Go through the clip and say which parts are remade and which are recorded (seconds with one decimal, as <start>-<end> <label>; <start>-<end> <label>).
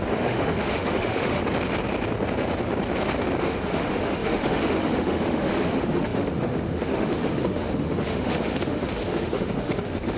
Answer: 0.0-1.4 remade; 1.4-3.4 recorded; 3.4-10.2 remade